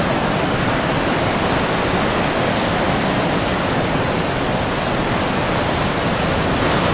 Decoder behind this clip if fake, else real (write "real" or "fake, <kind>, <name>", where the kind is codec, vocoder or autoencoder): real